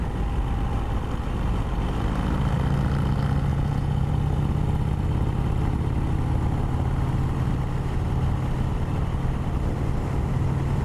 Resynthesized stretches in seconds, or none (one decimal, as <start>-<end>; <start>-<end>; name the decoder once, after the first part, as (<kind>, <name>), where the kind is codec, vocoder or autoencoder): 3.5-4.1 (vocoder, Vocos)